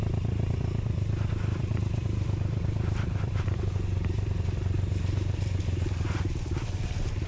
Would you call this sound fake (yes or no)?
yes